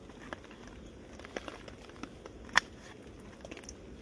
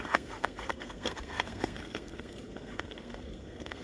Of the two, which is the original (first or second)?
first